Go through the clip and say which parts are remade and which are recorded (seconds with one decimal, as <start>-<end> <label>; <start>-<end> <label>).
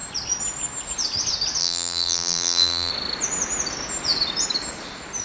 0.0-1.6 recorded; 1.6-2.9 remade; 2.9-5.2 recorded